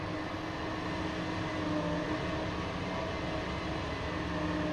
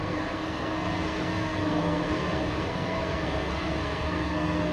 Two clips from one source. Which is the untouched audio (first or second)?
first